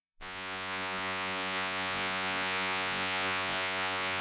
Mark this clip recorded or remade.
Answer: remade